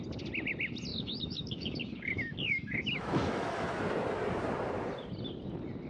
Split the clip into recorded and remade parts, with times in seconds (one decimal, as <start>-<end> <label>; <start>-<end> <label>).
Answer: 0.0-0.9 recorded; 0.9-3.8 remade; 3.8-5.9 recorded